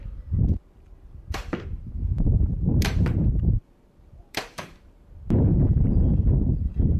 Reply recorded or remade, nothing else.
remade